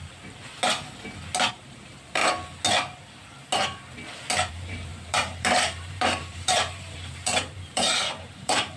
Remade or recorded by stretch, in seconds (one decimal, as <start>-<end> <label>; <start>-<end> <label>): 0.0-1.5 recorded; 1.5-2.2 remade; 2.2-4.5 recorded; 4.5-8.8 remade